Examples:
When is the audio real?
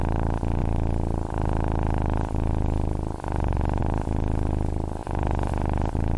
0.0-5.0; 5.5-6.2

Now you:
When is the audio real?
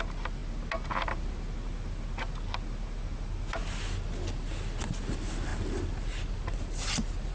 0.0-7.3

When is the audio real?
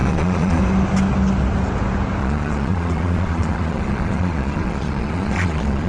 0.6-2.2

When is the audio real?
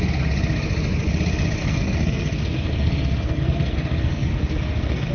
0.0-1.6